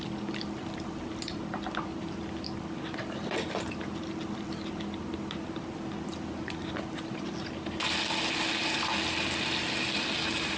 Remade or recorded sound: recorded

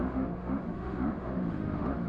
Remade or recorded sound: remade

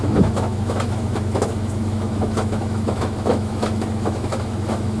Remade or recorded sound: remade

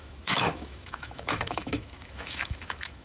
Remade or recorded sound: remade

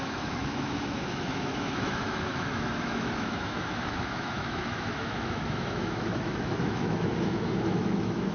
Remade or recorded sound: remade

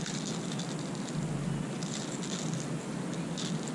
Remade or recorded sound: recorded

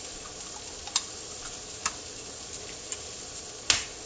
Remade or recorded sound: recorded